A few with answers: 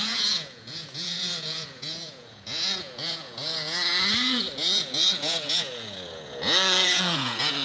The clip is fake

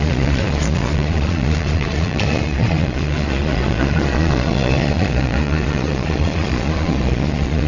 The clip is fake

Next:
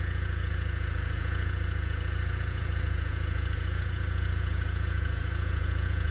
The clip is fake